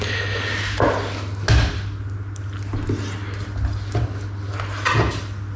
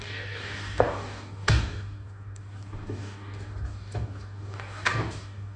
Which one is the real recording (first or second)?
first